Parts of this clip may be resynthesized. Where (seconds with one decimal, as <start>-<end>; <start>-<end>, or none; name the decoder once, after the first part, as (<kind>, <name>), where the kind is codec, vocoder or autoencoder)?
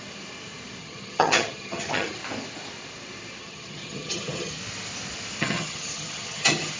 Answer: 0.8-2.2 (vocoder, HiFi-GAN); 3.4-4.6; 5.4-6.8